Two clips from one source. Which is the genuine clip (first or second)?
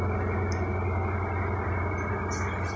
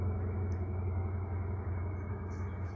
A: first